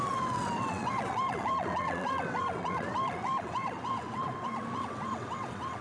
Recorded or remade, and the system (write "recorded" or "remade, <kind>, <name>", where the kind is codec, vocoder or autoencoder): remade, vocoder, WaveNeXt